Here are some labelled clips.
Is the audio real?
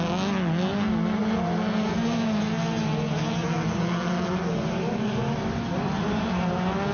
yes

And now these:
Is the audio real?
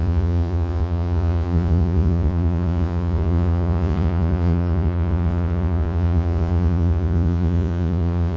no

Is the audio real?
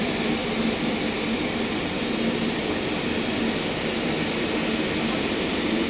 yes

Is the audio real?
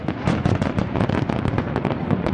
no